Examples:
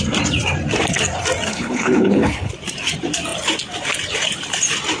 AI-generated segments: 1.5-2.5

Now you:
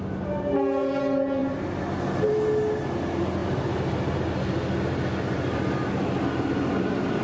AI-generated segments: none

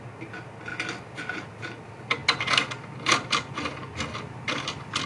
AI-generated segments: none

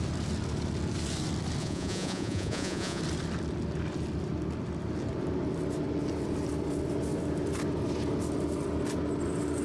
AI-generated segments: 1.6-3.0